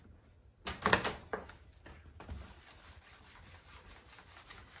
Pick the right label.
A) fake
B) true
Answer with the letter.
B